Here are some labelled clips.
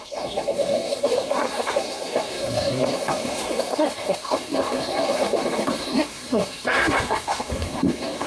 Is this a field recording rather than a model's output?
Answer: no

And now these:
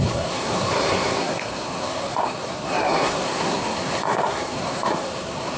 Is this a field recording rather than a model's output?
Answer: no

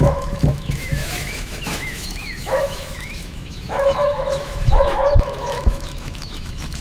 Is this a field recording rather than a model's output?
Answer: no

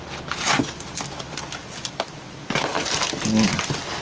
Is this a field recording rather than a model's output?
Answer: yes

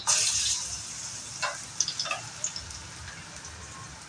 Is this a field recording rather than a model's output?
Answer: yes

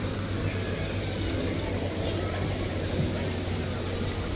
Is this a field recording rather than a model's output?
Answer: yes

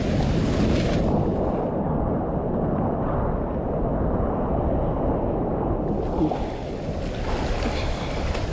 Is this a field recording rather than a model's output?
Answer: yes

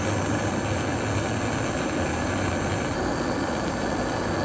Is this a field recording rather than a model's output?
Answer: yes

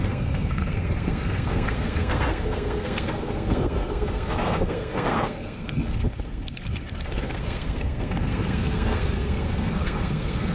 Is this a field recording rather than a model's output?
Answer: no